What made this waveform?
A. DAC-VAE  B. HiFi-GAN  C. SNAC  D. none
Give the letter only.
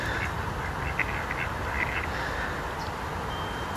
D